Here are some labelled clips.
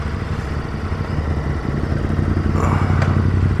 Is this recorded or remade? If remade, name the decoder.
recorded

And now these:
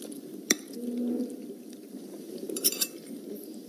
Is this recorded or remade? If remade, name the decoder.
remade, vocoder, BigVGAN v2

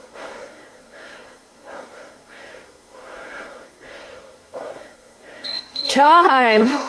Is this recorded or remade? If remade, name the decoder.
remade, codec, SNAC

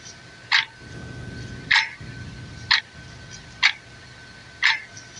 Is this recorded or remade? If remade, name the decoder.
recorded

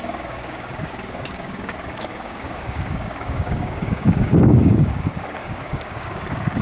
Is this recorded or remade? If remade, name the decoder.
remade, codec, DAC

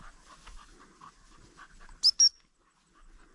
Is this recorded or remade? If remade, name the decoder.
recorded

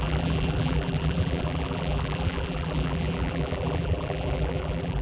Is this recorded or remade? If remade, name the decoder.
remade, vocoder, BigVGAN v2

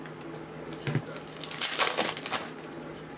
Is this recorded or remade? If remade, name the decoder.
recorded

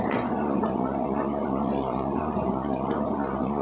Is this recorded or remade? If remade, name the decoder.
remade, vocoder, Vocos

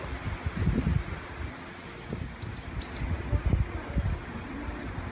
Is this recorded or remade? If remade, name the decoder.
recorded